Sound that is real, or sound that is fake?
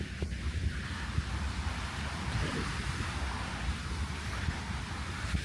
real